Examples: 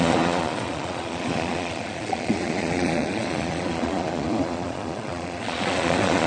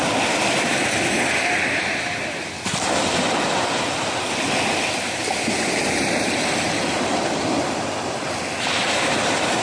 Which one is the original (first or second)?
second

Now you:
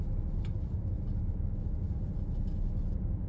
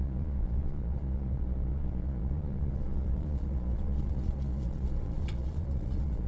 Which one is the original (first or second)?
first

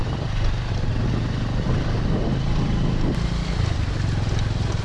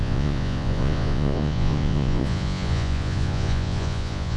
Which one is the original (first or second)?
first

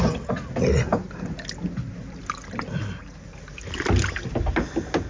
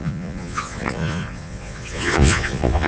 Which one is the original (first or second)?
first